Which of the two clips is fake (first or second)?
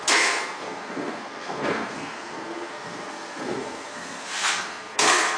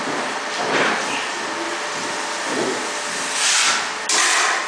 first